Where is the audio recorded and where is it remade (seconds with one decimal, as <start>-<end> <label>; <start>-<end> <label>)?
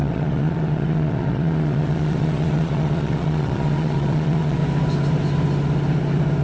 0.0-4.6 remade; 4.6-6.4 recorded